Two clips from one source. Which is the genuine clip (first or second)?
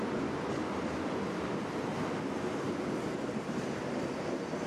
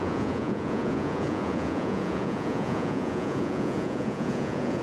first